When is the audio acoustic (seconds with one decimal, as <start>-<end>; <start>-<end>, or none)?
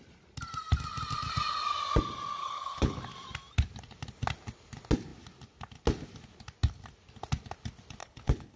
0.0-2.4; 3.0-8.0